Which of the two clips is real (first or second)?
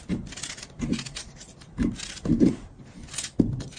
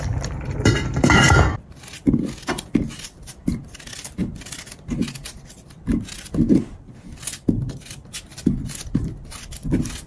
first